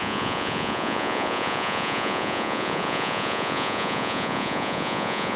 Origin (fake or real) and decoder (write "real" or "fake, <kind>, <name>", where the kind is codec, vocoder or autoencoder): fake, vocoder, Vocos